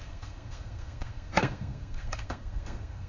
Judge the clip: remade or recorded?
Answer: remade